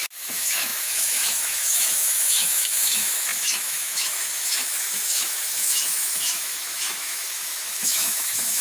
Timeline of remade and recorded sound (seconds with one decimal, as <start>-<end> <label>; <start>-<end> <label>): 0.0-8.6 remade